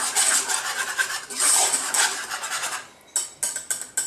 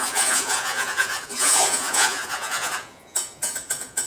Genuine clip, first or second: first